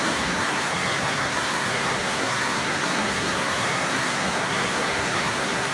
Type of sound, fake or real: fake